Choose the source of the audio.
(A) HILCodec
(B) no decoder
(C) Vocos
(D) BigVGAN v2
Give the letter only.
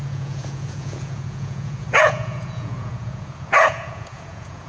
C